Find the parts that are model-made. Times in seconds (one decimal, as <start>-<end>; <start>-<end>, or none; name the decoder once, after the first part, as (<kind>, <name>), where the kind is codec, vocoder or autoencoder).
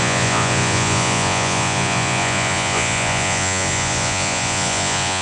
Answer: 0.0-5.2 (vocoder, Vocos)